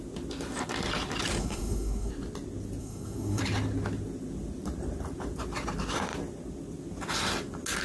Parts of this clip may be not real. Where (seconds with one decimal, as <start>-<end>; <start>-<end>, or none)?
1.4-2.1; 2.8-3.4